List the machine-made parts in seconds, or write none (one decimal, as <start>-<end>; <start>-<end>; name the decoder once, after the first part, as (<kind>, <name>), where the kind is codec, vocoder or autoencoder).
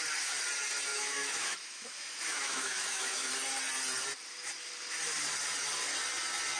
0.9-3.3 (autoencoder, DAC-VAE)